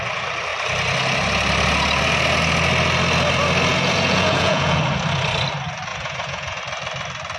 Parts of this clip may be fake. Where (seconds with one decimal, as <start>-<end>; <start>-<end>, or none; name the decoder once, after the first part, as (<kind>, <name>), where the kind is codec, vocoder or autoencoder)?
3.7-4.8 (vocoder, Vocos); 5.9-6.6

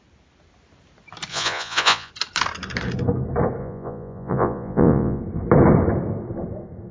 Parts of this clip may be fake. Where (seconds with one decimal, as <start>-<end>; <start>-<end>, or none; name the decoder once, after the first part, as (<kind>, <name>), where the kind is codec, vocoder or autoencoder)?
1.3-2.1 (vocoder, Vocos); 3.6-5.2

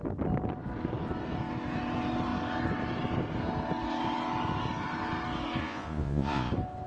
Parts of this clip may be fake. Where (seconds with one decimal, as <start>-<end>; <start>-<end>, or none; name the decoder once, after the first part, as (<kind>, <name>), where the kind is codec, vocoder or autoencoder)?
5.6-6.5 (vocoder, Vocos)

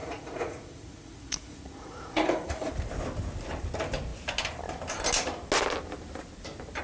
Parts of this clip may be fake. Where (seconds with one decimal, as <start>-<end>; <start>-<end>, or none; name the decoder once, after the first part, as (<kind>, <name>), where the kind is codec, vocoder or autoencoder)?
0.0-2.7 (vocoder, Vocos)

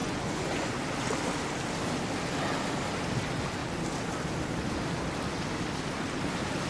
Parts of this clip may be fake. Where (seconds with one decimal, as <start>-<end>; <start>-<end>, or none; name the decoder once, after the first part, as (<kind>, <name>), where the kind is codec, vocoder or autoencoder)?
0.0-0.7 (vocoder, Vocos)

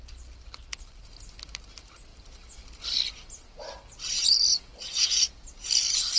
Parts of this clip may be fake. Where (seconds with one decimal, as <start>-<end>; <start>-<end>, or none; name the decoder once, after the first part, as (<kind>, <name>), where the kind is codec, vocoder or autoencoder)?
4.5-5.7 (vocoder, Vocos)

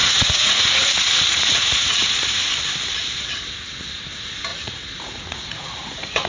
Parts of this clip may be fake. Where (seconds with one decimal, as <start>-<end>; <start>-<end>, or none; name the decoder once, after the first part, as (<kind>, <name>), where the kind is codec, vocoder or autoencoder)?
0.0-2.5 (vocoder, Vocos); 4.5-6.3